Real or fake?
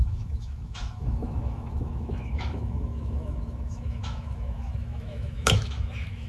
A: fake